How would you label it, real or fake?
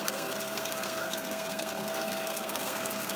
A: fake